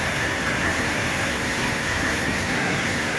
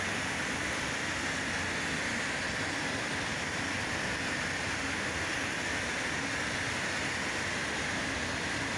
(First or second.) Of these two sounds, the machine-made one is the first